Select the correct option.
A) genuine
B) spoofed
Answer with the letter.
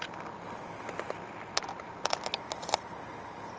A